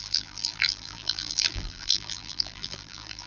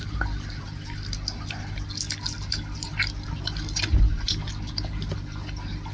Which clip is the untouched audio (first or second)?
second